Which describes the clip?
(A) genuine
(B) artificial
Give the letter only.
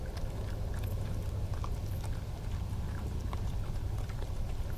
A